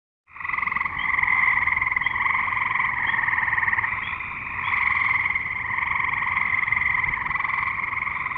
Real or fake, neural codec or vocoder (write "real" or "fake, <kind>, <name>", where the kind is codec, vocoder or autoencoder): real